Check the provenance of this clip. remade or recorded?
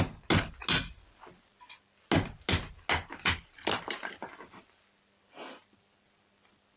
recorded